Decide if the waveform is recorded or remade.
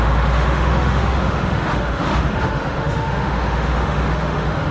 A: remade